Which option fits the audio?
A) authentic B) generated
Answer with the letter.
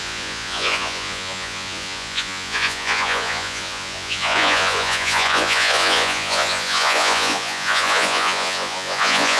B